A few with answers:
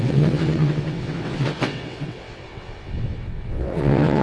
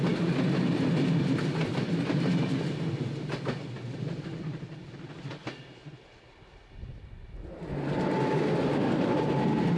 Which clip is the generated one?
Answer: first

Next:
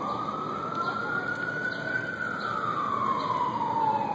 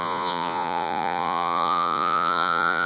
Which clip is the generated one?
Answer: second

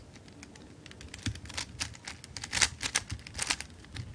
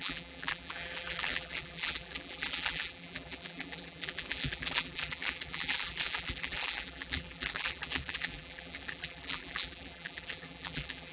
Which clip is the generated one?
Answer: second